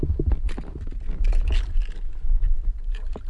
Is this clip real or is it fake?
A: real